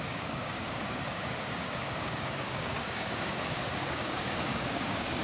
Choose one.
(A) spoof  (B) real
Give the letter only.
A